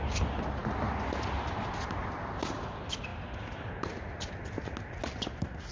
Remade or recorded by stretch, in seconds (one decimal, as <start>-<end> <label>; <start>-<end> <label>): 0.0-5.7 recorded